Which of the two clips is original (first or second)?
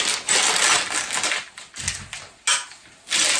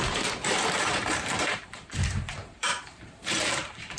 first